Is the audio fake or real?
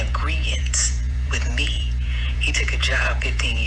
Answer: fake